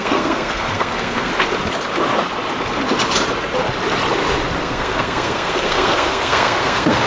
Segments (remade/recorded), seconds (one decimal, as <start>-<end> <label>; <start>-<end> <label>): 0.0-1.3 remade; 1.3-4.6 recorded; 4.6-7.1 remade